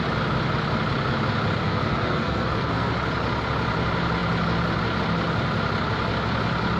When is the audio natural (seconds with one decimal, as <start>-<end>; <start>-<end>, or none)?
0.0-1.6; 2.9-6.8